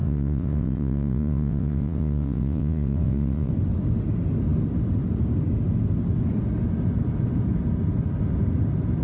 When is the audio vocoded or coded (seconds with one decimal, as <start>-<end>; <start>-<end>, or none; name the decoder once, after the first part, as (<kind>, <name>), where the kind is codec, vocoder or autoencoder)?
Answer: 0.0-3.5 (vocoder, WaveNeXt)